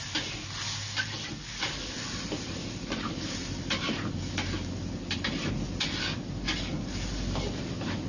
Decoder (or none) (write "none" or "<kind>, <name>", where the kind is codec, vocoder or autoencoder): none